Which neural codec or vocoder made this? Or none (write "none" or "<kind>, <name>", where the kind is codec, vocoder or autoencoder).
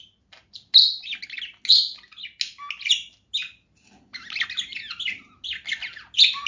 none